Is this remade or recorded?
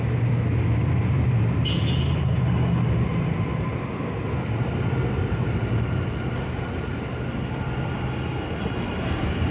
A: recorded